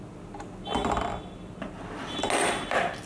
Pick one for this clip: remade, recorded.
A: recorded